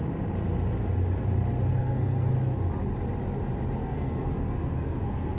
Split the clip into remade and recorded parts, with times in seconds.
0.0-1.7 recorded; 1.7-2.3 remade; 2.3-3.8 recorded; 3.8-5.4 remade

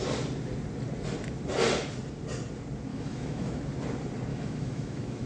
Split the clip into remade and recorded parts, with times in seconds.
0.0-2.9 recorded; 2.9-3.6 remade; 3.6-4.3 recorded; 4.3-5.3 remade

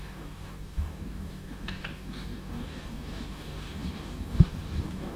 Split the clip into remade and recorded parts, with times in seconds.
0.0-5.2 remade

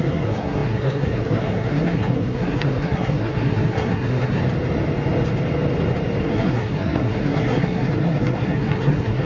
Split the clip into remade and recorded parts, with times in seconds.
0.0-4.4 remade; 4.4-6.2 recorded; 6.2-9.3 remade

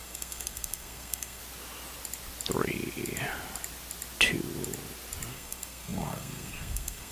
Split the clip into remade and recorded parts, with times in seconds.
0.0-1.4 remade; 1.4-5.3 recorded; 5.3-7.1 remade